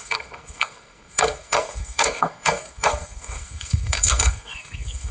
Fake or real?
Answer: fake